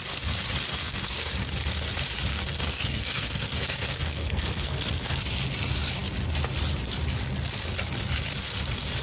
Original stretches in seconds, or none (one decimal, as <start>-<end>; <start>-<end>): 0.0-0.7; 1.3-2.3; 5.2-9.0